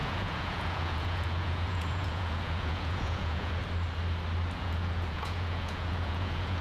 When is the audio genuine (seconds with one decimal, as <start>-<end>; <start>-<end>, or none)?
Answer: 3.6-4.6